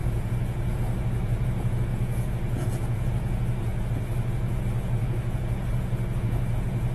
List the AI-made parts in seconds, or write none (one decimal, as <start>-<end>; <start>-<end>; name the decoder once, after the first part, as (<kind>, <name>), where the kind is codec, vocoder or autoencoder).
0.0-6.9 (vocoder, Vocos)